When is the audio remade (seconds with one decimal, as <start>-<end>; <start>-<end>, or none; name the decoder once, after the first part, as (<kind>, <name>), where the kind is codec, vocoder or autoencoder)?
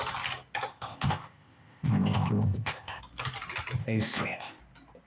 0.7-3.0 (codec, ZipCodec); 3.8-4.6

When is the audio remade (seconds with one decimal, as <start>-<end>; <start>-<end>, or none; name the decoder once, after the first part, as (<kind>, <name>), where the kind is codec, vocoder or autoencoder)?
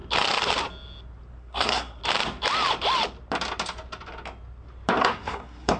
1.4-2.0 (codec, SNAC); 5.0-5.8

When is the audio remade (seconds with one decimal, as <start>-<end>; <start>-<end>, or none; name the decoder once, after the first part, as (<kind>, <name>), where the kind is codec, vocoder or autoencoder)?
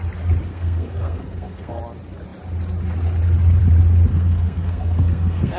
0.5-1.8 (codec, SNAC); 4.1-5.6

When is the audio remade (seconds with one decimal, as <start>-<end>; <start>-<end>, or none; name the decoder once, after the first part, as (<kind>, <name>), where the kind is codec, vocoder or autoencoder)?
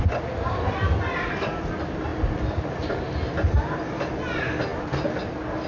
none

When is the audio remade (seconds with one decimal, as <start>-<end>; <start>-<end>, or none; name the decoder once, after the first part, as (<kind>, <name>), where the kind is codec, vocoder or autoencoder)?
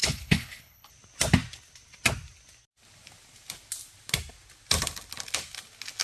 0.0-0.9 (codec, HILCodec)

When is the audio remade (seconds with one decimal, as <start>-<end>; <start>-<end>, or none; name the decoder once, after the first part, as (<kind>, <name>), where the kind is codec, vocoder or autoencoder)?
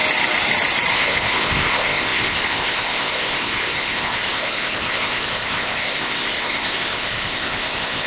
0.9-8.1 (codec, ZipCodec)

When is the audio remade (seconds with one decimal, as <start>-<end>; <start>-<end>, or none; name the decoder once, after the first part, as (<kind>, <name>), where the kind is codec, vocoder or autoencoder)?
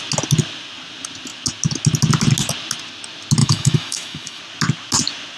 3.4-4.4 (autoencoder, DAC-VAE)